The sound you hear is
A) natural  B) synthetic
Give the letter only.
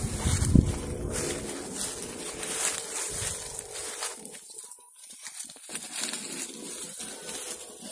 A